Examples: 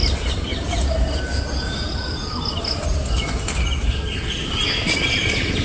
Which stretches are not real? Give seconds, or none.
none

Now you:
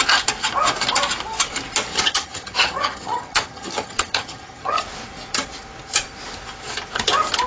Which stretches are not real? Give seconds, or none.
1.9-4.8 (vocoder, HiFi-GAN)

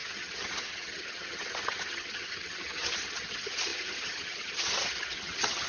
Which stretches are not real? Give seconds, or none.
0.0-5.7 (vocoder, HiFi-GAN)

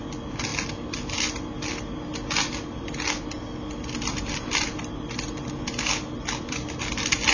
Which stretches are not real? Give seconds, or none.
none